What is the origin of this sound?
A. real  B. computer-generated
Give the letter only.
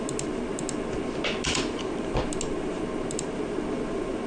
A